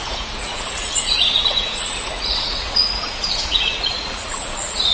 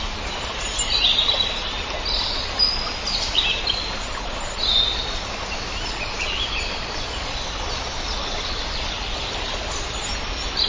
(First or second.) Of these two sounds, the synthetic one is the first